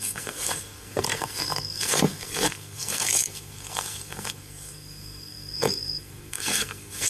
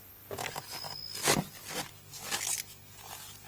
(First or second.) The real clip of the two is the second